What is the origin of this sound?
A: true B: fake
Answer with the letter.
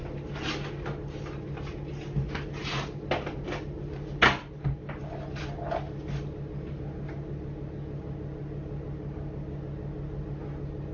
A